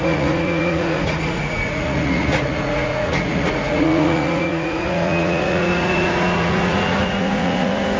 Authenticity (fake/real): fake